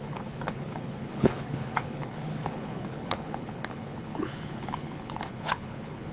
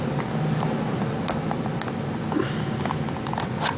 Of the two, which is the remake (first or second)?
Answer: first